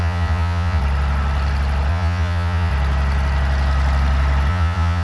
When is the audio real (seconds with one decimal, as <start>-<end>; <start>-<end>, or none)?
0.8-1.9; 2.7-4.5